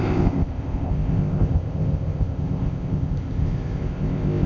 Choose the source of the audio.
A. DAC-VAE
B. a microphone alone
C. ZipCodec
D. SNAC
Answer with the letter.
C